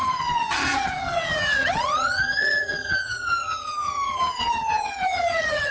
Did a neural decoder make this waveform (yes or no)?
yes